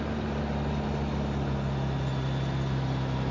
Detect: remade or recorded recorded